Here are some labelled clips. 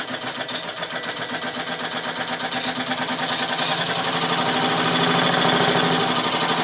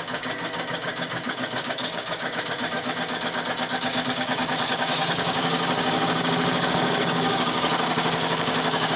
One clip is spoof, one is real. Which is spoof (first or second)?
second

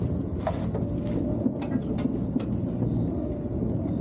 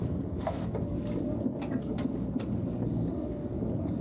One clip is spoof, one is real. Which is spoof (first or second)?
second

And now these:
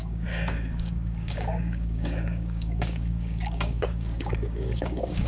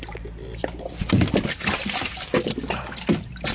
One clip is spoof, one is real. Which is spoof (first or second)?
first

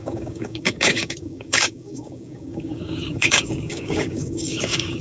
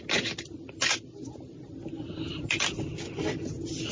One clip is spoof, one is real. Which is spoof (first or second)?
first